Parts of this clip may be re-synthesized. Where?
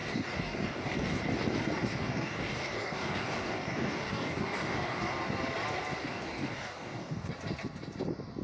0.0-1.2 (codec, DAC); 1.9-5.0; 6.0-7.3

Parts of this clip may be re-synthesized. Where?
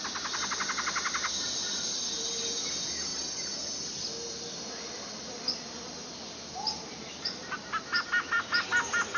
none